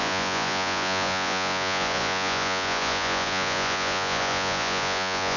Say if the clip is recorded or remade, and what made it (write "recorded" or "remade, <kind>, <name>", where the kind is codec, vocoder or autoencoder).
remade, vocoder, Vocos